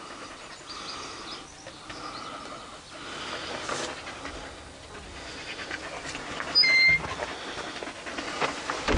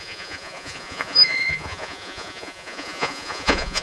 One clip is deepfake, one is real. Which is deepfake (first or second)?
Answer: second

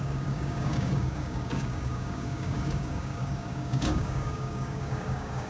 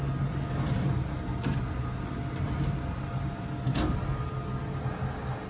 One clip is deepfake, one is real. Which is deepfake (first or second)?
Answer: first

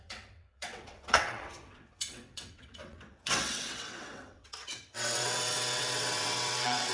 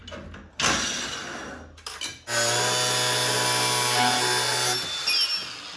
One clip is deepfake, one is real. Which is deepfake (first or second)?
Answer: first